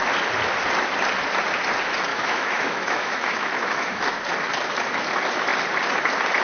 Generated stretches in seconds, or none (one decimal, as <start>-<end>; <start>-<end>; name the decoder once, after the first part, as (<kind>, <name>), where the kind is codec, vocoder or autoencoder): 2.1-4.0 (autoencoder, DAC-VAE)